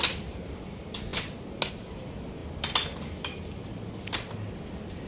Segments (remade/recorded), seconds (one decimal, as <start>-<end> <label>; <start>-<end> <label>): 0.0-5.1 recorded